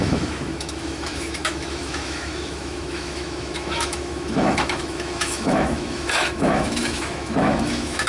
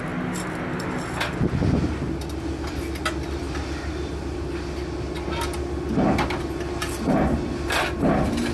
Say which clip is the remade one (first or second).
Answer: first